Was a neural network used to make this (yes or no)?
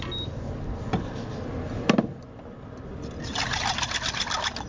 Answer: no